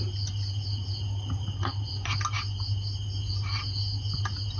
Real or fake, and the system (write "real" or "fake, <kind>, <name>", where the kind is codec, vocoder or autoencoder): real